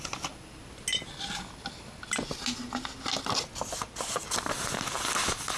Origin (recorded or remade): recorded